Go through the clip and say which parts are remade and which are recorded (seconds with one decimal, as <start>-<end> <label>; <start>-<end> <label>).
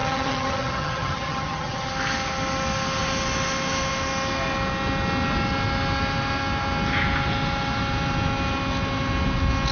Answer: 0.0-1.9 remade; 1.9-9.7 recorded